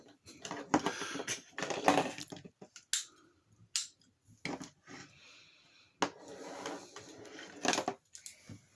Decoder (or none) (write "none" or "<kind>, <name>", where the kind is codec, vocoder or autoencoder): none